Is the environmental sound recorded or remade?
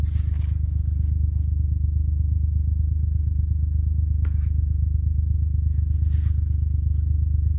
recorded